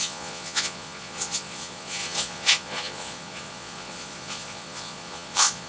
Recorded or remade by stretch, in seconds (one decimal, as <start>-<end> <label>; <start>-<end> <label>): 0.0-5.7 remade